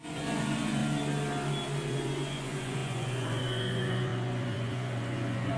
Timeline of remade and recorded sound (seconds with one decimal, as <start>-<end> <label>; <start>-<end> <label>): 0.0-0.8 remade; 0.8-1.9 recorded; 1.9-5.6 remade